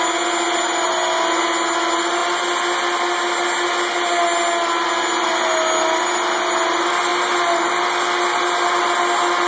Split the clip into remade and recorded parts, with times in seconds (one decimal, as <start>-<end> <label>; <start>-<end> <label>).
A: 0.0-9.5 recorded